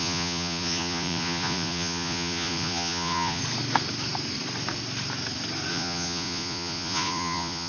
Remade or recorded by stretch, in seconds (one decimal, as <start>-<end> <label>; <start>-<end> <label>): 0.0-3.4 remade; 3.4-5.7 recorded; 5.7-7.7 remade